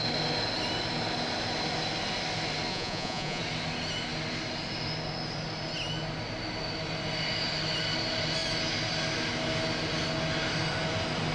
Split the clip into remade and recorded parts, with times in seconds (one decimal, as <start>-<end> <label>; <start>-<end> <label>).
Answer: 0.0-2.7 recorded; 2.7-3.4 remade; 3.4-11.3 recorded